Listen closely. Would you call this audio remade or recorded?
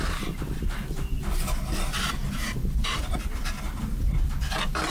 recorded